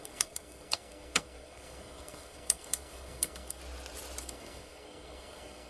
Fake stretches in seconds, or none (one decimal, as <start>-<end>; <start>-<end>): 0.0-3.6; 4.2-5.7